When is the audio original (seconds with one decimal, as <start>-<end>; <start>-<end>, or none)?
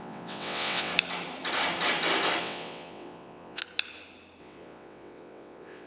0.9-2.4; 3.6-4.4